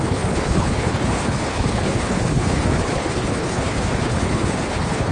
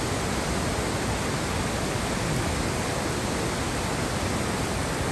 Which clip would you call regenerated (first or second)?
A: first